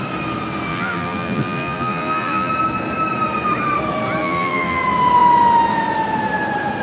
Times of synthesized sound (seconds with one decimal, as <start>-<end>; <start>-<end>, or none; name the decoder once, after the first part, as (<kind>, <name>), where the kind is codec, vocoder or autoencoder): 0.7-2.5 (vocoder, BigVGAN v2); 4.2-4.8